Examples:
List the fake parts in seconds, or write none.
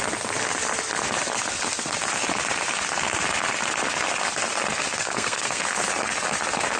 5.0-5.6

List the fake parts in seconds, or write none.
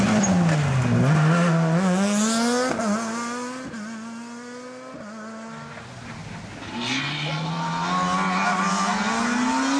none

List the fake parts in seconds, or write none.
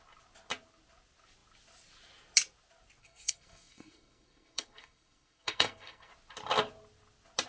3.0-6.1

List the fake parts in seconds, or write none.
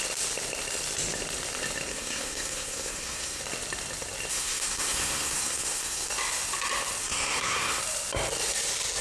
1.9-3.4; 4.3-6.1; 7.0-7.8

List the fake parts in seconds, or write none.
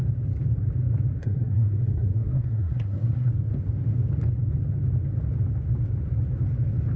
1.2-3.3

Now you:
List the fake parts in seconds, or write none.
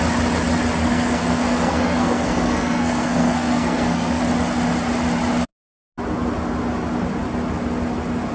0.8-4.2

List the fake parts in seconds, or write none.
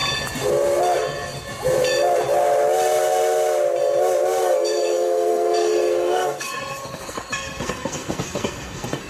4.4-9.1